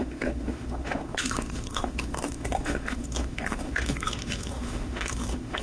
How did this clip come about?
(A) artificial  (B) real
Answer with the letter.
A